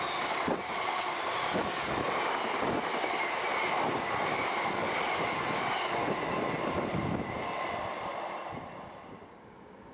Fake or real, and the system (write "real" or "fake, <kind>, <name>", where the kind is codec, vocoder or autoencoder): real